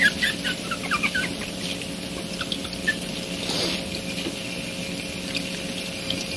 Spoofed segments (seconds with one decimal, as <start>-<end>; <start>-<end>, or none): 0.0-1.7; 2.3-6.4